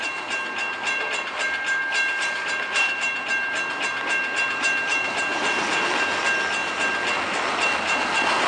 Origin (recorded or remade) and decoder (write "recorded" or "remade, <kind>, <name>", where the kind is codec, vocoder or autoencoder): recorded